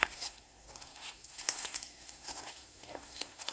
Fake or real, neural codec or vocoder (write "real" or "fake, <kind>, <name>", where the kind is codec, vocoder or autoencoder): fake, codec, SNAC